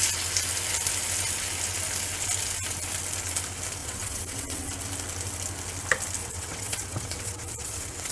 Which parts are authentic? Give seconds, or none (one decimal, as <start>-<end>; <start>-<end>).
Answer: 0.0-3.8; 4.7-6.2